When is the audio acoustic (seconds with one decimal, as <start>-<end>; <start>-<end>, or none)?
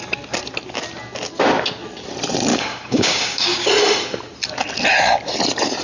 0.0-2.5; 3.7-5.8